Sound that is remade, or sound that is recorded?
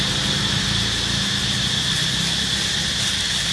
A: recorded